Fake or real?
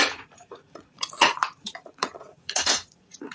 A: fake